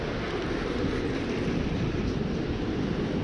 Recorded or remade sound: remade